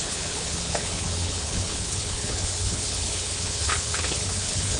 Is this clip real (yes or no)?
no